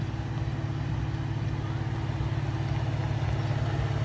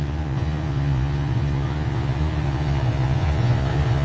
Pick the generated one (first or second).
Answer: second